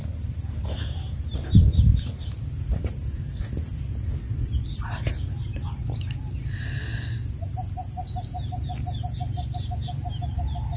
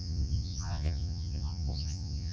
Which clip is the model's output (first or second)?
second